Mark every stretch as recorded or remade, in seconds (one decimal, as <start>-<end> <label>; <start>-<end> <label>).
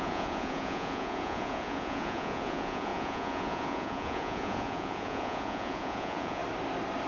0.0-6.4 remade; 6.4-7.1 recorded